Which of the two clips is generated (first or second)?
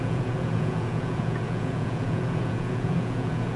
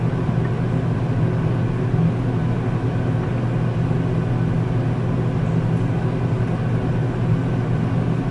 first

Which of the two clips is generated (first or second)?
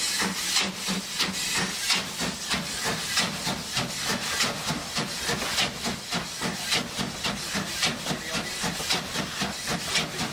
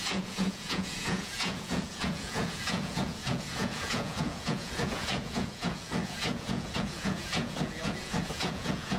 second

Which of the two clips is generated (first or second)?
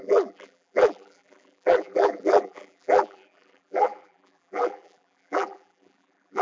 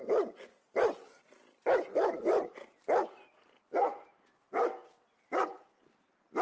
first